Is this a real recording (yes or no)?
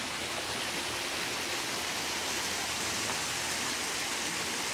yes